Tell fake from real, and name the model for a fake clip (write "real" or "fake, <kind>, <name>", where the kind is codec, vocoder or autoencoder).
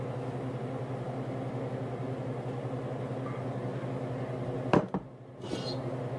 real